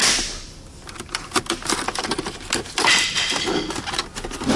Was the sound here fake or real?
real